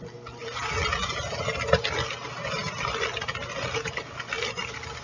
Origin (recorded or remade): recorded